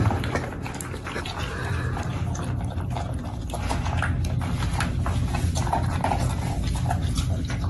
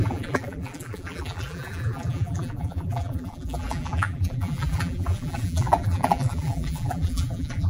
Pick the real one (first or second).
first